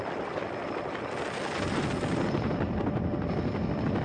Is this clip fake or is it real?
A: real